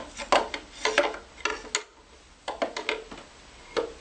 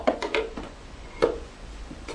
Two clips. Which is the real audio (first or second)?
first